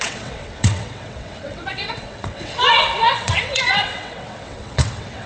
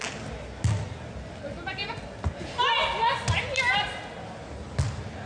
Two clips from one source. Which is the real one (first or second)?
second